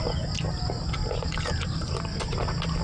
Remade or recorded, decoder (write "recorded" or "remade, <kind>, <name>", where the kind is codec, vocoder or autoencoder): recorded